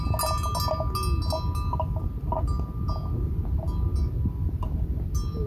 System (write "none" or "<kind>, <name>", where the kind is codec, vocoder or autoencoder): none